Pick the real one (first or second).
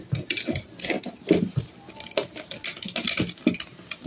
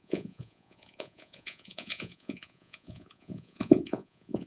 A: first